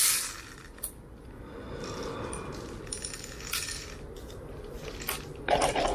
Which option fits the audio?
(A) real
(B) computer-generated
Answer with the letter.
A